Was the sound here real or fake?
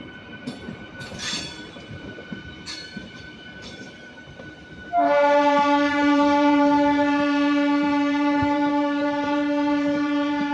fake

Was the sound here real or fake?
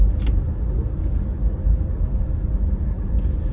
real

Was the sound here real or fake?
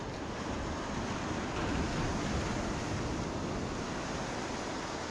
real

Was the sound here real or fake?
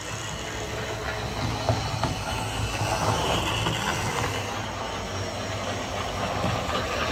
real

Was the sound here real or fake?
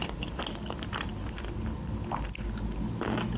real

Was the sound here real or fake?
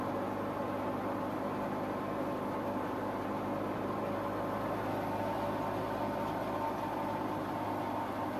real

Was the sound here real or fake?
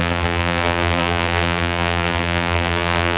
fake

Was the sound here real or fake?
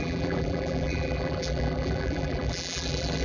fake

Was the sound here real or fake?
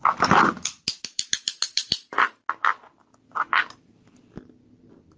real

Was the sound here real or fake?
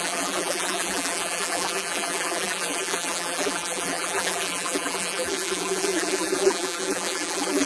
fake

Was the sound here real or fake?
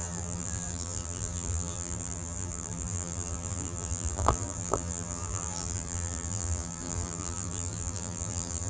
fake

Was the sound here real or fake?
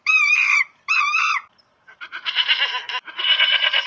fake